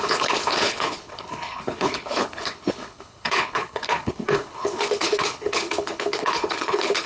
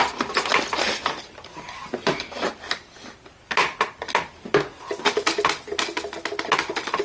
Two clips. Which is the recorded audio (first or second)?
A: second